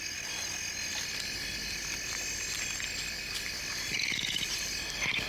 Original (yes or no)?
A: yes